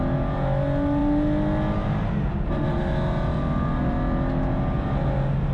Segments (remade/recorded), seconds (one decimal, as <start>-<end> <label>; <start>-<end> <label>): 0.0-5.5 recorded